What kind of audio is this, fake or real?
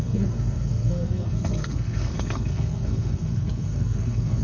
fake